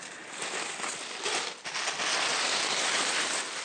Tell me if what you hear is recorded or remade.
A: recorded